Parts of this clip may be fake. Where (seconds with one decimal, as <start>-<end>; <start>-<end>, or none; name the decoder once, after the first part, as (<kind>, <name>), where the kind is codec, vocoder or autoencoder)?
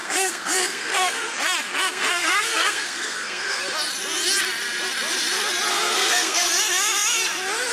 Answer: 0.0-3.6 (codec, SNAC); 5.7-6.5